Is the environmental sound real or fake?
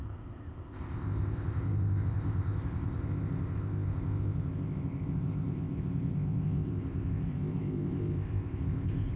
fake